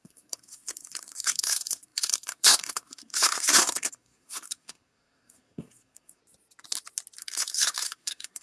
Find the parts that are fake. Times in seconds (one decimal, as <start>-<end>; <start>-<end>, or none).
0.0-6.2; 7.2-8.4